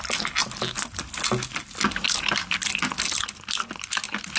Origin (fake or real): real